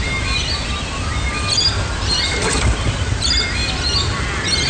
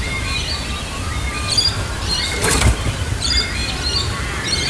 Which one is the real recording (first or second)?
first